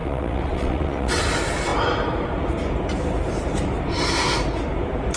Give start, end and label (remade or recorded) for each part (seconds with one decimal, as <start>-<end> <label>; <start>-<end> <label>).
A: 0.0-1.2 remade; 1.2-5.2 recorded